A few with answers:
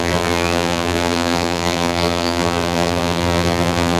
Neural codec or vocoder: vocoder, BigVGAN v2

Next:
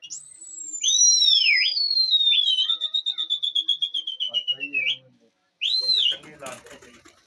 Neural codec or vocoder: none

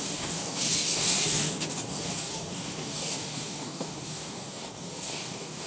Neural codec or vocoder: codec, DAC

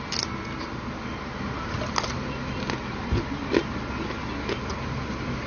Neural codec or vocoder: none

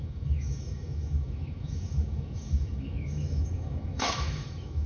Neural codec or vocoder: autoencoder, DAC-VAE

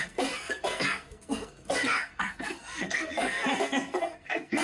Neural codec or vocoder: codec, SNAC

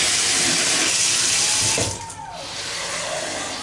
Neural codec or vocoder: none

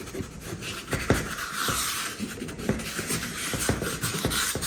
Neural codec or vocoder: vocoder, BigVGAN v2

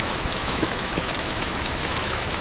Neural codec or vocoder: autoencoder, DAC-VAE